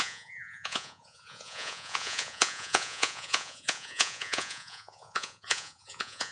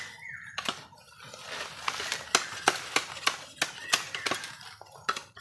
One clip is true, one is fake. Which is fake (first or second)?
first